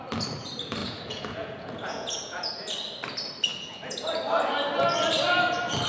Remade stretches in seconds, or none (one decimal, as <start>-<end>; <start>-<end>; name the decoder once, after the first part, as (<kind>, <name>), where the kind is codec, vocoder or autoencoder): 0.8-2.5 (vocoder, Vocos); 3.5-4.2